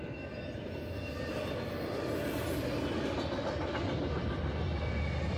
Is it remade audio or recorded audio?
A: recorded